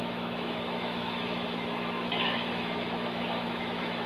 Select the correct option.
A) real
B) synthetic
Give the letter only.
B